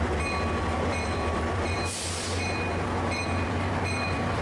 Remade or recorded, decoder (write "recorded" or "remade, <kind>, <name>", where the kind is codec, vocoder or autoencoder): remade, vocoder, BigVGAN v2